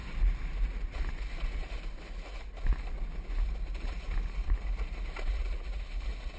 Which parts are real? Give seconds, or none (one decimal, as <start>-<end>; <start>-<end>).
0.0-6.4